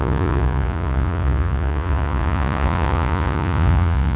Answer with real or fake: fake